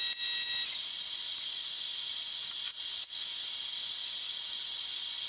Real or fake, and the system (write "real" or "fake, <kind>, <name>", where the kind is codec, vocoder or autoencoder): real